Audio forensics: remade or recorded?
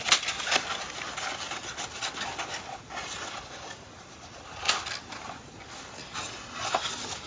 recorded